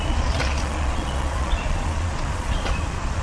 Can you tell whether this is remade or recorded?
remade